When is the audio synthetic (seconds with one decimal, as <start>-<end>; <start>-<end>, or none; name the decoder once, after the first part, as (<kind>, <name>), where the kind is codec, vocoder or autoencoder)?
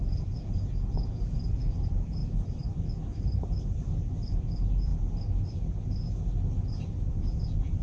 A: 0.0-2.2 (vocoder, Vocos); 4.4-4.9; 7.1-7.8